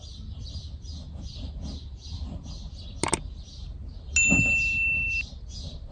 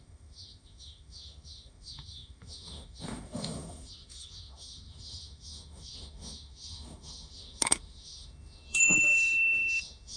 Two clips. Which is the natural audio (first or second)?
first